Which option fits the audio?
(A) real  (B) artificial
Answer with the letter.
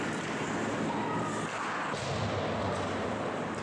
A